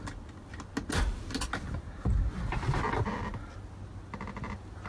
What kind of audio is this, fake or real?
real